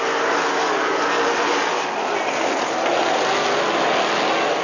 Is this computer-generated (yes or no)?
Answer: no